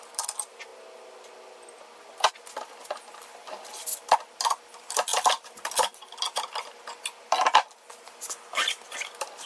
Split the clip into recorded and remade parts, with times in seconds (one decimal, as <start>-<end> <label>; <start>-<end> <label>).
0.0-5.1 recorded; 5.1-5.7 remade; 5.7-9.5 recorded

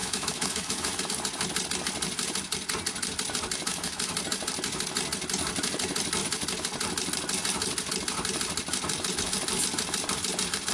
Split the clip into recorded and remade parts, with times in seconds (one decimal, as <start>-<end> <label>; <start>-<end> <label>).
0.0-1.0 remade; 1.0-3.7 recorded; 3.7-4.2 remade; 4.2-10.7 recorded